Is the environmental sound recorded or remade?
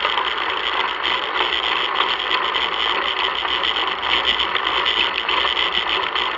recorded